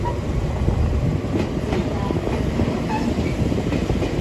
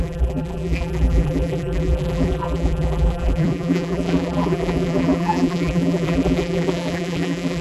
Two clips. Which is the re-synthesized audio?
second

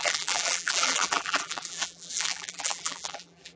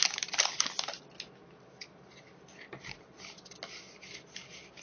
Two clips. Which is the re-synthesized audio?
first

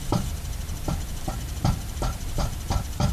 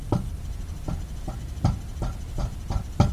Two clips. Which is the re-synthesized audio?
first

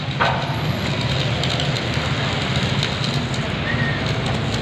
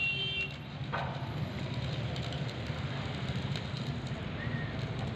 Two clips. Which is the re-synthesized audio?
second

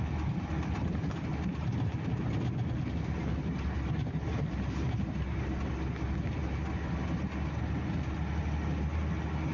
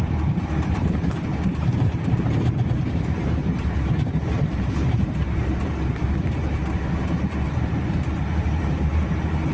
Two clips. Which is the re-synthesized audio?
second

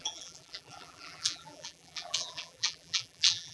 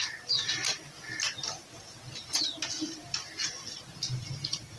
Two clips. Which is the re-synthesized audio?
first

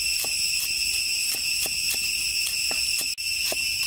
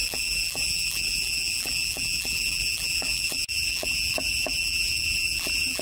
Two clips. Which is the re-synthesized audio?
second